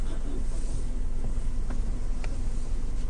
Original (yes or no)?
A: yes